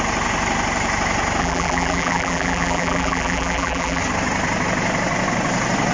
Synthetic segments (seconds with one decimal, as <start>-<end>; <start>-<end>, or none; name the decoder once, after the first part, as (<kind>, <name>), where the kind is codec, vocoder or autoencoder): 1.4-4.0 (vocoder, BigVGAN v2)